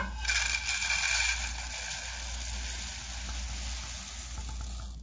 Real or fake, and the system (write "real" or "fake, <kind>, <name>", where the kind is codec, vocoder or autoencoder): real